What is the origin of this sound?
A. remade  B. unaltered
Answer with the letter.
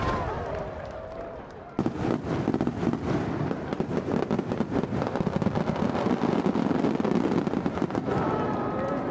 A